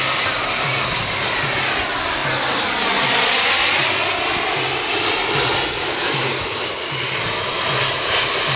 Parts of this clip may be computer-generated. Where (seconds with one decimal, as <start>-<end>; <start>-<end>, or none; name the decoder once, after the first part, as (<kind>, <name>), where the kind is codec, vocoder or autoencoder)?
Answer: none